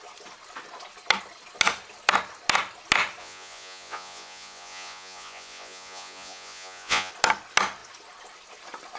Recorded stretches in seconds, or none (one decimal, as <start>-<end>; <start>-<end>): 0.0-3.2; 7.1-9.0